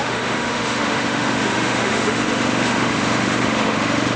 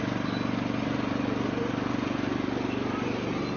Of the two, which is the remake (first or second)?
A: first